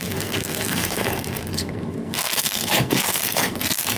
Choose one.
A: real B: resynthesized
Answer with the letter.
B